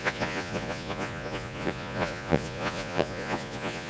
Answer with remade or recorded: remade